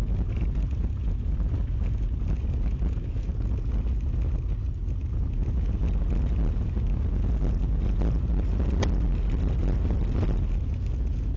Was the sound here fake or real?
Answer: real